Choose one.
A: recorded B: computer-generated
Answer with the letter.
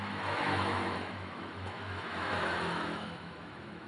B